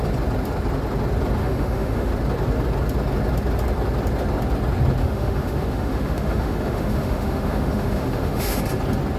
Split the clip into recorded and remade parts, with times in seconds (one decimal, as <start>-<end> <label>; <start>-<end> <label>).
0.0-1.4 recorded; 1.4-2.1 remade; 2.1-5.0 recorded; 5.0-8.6 remade; 8.6-9.2 recorded